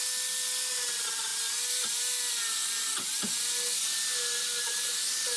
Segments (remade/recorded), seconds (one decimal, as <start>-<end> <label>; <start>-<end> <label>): 0.0-5.4 recorded

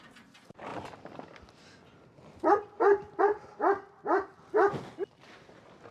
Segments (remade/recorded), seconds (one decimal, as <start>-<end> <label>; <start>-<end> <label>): 0.0-5.9 recorded